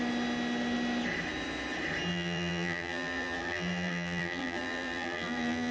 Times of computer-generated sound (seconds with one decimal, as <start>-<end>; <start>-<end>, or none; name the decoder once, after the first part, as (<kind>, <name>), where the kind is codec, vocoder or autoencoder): 2.1-5.7 (vocoder, BigVGAN v2)